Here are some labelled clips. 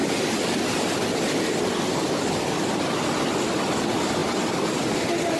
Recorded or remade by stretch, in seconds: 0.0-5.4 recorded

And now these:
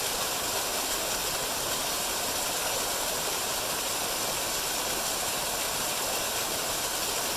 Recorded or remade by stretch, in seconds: 0.0-7.4 recorded

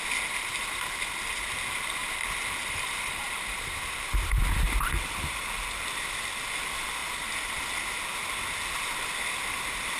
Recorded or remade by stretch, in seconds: 0.0-2.0 recorded; 2.0-5.0 remade; 5.0-10.0 recorded

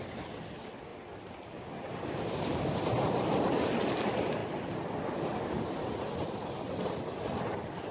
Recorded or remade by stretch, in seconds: 0.0-7.9 recorded

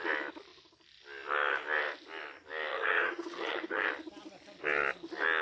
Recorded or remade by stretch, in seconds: 0.0-2.7 recorded; 2.7-3.9 remade; 3.9-5.4 recorded

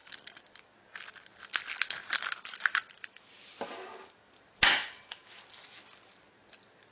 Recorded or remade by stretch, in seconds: 0.0-6.9 remade

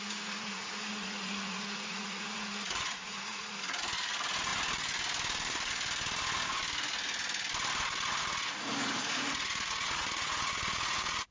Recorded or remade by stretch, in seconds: 0.0-4.5 remade; 4.5-8.1 recorded; 8.1-11.3 remade

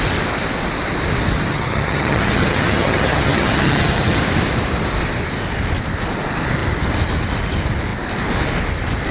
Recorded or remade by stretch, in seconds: 0.0-1.5 recorded; 1.5-4.2 remade; 4.2-9.1 recorded